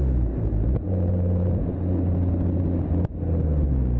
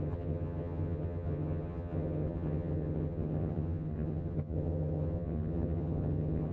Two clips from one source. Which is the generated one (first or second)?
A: second